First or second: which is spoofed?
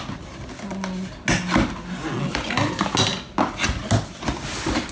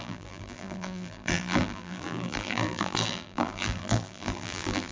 second